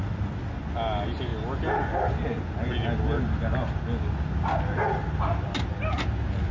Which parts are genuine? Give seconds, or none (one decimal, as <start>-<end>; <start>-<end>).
0.0-6.5